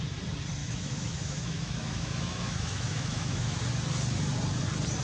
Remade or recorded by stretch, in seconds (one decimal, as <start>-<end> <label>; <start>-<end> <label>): 0.0-0.6 recorded; 0.6-3.6 remade; 3.6-5.0 recorded